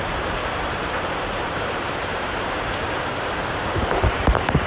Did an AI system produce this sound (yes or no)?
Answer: yes